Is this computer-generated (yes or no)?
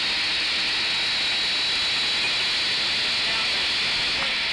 no